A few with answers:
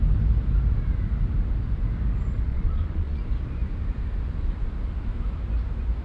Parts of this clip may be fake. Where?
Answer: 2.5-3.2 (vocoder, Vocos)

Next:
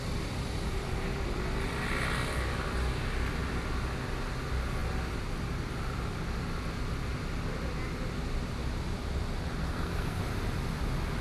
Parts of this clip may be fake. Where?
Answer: 9.6-10.2 (codec, SNAC)

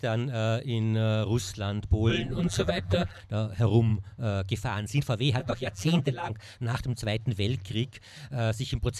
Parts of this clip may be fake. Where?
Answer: 2.1-3.2 (vocoder, BigVGAN v2); 5.4-6.3

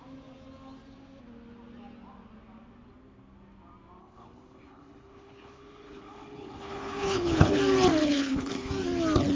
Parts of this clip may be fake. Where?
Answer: 4.0-7.6 (codec, HILCodec); 8.0-8.7